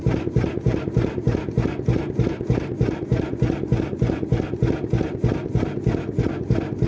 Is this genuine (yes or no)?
yes